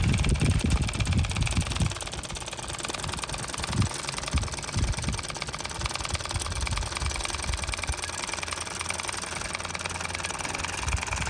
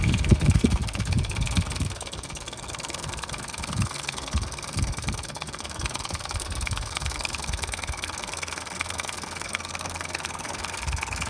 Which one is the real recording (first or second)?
first